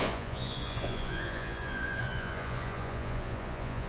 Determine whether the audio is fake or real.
fake